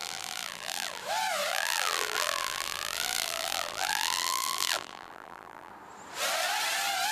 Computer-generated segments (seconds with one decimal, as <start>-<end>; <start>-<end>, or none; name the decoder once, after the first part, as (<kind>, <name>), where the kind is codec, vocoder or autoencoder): 0.0-1.0 (vocoder, BigVGAN v2); 1.5-5.7